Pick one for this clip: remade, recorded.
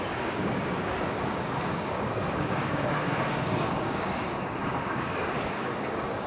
remade